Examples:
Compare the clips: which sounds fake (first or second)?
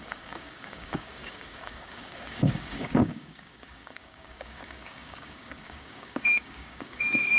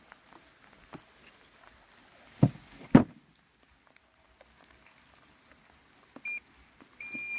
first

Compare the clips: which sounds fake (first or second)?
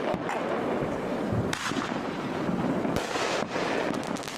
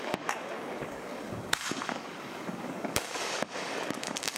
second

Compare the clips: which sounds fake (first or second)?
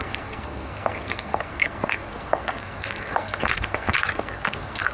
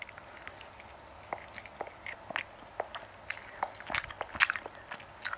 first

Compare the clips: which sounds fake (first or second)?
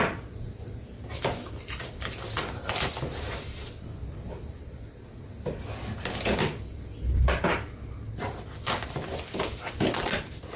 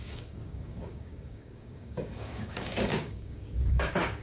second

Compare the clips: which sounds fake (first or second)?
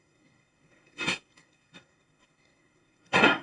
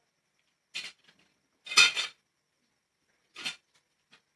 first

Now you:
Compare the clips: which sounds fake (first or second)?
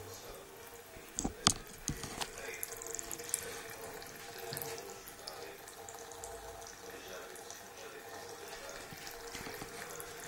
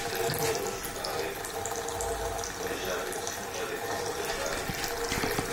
second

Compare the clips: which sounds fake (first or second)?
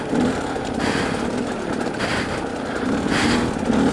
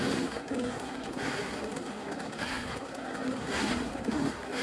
second